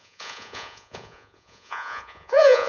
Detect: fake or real fake